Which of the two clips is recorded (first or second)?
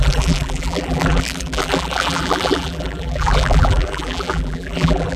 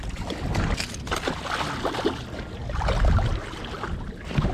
second